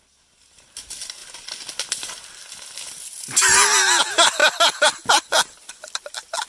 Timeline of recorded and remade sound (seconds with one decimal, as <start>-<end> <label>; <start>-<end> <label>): 0.0-6.5 recorded